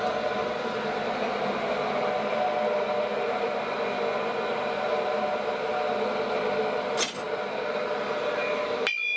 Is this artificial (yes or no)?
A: no